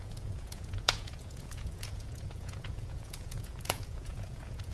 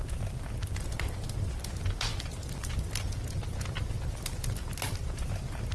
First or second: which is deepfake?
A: first